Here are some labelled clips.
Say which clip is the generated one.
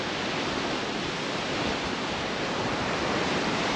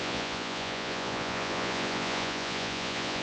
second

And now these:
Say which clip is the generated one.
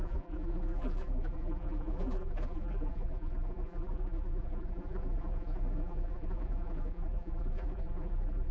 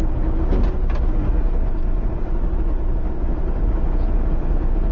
first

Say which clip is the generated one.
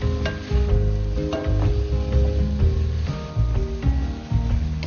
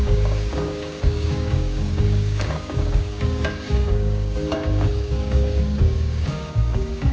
second